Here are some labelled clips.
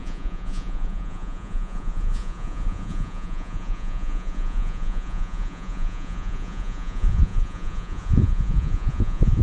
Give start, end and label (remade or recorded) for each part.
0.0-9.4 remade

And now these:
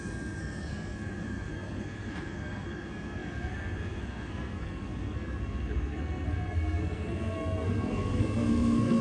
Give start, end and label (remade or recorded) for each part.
0.0-9.0 remade

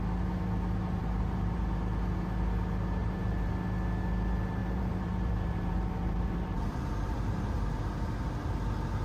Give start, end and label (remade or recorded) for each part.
0.0-1.0 recorded; 1.0-1.6 remade; 1.6-3.0 recorded; 3.0-3.5 remade; 3.5-4.6 recorded; 4.6-7.8 remade; 7.8-9.0 recorded

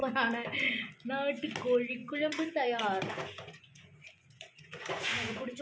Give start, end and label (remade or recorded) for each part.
0.0-2.0 recorded; 2.0-5.6 remade

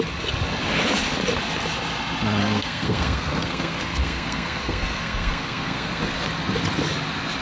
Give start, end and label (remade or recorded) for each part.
0.0-2.4 recorded; 2.4-6.0 remade; 6.0-7.4 recorded

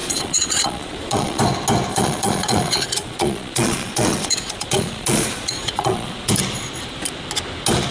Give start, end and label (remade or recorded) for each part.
0.0-1.4 remade; 1.4-1.9 recorded; 1.9-6.3 remade; 6.3-7.9 recorded